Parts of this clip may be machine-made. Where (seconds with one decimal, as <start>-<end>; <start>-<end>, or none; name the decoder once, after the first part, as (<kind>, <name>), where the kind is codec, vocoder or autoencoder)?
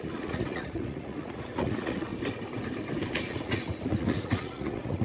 0.0-2.1 (vocoder, Vocos); 3.1-5.0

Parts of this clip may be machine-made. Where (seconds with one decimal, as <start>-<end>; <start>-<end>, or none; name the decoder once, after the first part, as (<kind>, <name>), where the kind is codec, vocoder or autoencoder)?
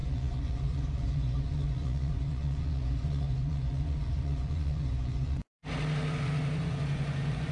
0.0-5.4 (vocoder, Vocos); 6.6-7.5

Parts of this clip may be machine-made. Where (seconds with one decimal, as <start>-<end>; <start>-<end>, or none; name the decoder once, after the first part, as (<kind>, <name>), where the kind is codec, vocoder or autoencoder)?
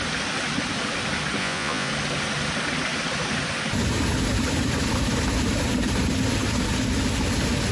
1.4-1.9 (vocoder, Vocos)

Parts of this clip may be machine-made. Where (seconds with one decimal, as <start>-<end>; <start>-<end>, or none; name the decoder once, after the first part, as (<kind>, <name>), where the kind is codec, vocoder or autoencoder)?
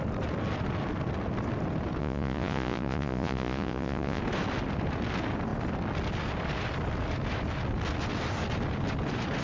2.0-4.2 (vocoder, Vocos)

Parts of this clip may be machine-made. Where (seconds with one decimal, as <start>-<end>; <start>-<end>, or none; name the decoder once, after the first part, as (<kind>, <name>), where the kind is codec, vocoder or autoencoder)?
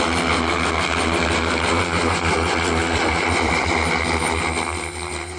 1.7-3.7 (vocoder, Vocos)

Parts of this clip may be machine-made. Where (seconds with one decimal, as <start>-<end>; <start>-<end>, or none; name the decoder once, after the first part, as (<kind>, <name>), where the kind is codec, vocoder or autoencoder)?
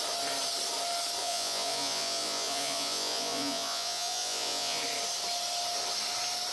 1.2-4.8 (vocoder, Vocos)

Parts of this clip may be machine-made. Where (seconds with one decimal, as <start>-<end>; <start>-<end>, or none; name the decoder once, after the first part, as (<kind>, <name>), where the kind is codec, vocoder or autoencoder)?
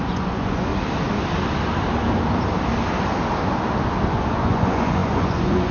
0.0-0.7 (vocoder, Vocos); 4.1-5.7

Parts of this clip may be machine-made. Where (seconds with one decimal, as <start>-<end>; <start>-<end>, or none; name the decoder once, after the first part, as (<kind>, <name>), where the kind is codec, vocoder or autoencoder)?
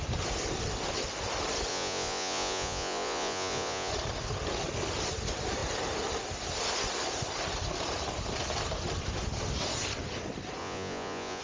1.7-3.9 (vocoder, Vocos); 10.6-11.4